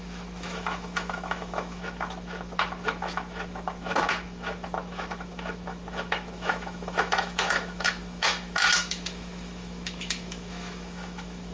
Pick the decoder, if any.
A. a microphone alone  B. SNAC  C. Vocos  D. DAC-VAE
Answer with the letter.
D